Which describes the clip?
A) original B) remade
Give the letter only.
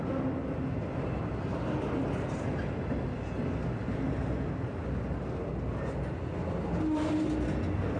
A